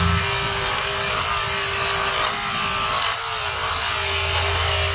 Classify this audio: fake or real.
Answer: real